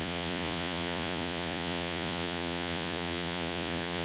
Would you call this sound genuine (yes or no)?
no